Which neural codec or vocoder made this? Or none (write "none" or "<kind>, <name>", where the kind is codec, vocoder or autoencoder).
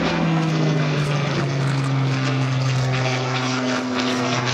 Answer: codec, SNAC